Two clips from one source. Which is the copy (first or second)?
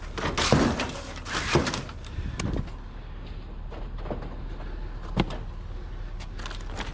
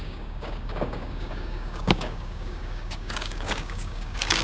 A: second